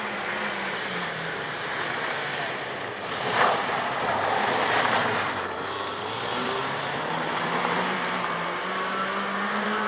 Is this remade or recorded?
remade